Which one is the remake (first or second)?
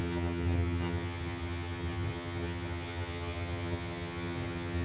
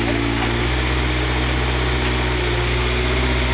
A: first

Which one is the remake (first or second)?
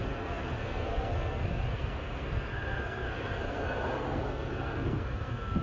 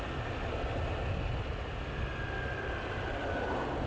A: first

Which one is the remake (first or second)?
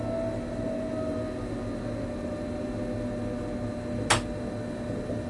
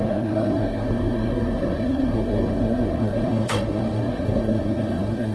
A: second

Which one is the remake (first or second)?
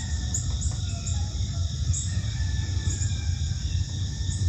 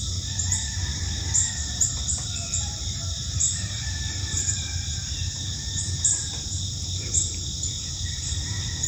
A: second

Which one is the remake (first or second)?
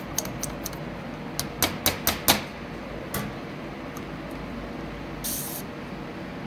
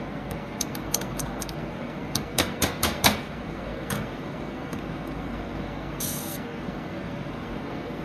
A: second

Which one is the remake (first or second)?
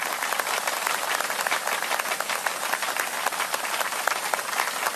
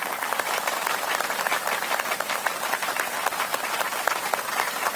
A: second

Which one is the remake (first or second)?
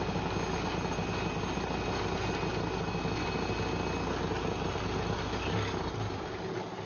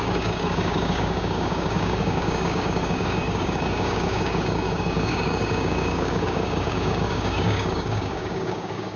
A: second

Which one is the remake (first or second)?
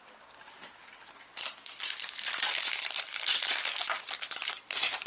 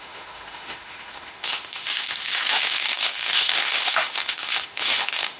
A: second